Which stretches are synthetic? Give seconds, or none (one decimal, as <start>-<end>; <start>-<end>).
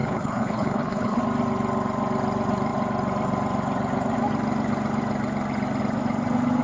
0.0-1.2